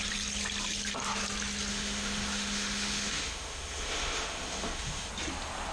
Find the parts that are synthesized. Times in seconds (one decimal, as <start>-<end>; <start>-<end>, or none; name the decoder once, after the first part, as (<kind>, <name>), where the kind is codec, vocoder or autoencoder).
1.7-5.1 (autoencoder, DAC-VAE)